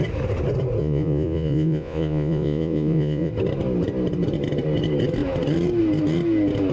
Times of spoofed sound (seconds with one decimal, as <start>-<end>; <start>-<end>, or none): 0.8-3.3